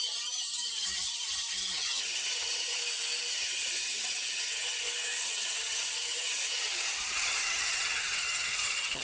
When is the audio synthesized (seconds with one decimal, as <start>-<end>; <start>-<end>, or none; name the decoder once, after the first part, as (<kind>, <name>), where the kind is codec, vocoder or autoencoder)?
0.0-2.8 (vocoder, HiFi-GAN); 3.3-9.0